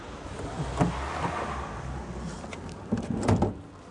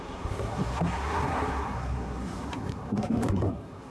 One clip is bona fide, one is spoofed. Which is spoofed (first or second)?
second